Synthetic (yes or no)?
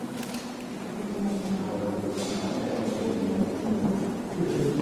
no